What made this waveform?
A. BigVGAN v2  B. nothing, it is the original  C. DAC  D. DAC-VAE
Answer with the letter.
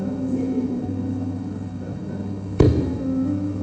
D